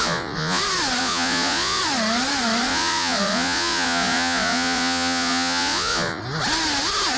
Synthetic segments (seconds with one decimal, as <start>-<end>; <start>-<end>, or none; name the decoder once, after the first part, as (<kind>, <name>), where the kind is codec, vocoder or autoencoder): 0.0-0.6 (vocoder, Vocos); 1.0-1.8; 2.7-6.2